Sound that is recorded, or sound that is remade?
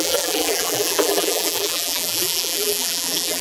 remade